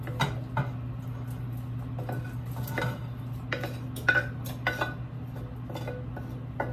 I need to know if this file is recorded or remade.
recorded